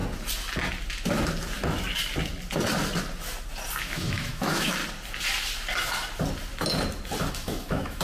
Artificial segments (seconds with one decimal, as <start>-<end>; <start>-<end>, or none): 3.8-4.8; 7.3-8.0